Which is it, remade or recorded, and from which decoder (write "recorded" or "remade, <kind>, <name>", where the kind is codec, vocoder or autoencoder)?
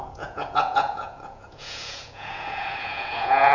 remade, vocoder, Vocos